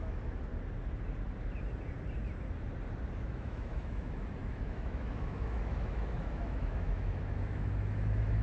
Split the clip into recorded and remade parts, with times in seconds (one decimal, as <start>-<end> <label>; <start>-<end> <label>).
0.0-0.5 remade; 0.5-3.2 recorded; 3.2-8.4 remade